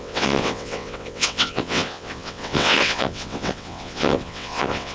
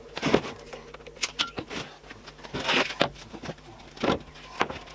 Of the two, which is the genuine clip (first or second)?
second